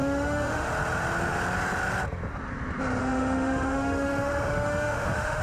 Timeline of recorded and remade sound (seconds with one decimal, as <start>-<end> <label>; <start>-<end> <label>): 0.0-0.7 remade; 0.7-3.0 recorded; 3.0-5.4 remade